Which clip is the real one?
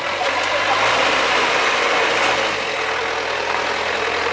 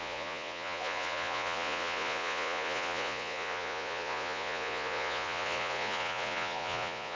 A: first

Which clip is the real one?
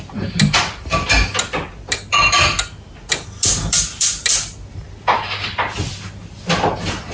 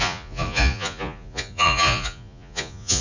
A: first